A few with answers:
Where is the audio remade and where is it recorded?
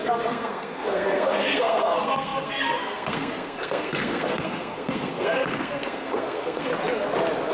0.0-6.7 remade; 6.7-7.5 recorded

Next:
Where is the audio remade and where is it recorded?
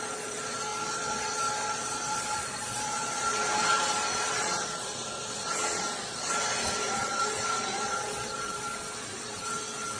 0.0-10.0 remade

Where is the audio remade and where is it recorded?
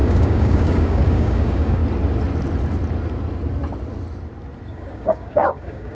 0.0-1.8 remade; 1.8-4.7 recorded; 4.7-5.9 remade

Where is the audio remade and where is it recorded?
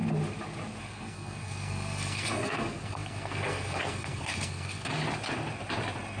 0.0-0.8 recorded; 0.8-4.9 remade; 4.9-6.2 recorded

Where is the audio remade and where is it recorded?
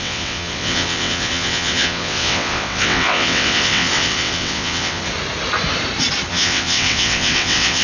0.0-5.0 remade; 5.0-6.3 recorded; 6.3-7.8 remade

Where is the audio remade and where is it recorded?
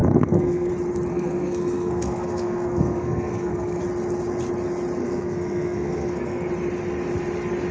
0.0-0.7 remade; 0.7-1.1 recorded; 1.1-3.8 remade; 3.8-5.0 recorded; 5.0-6.5 remade; 6.5-7.7 recorded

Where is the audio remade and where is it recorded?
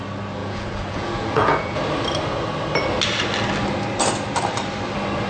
0.0-0.4 recorded; 0.4-1.8 remade; 1.8-5.3 recorded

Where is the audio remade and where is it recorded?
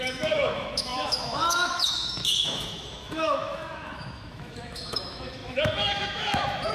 0.0-6.7 remade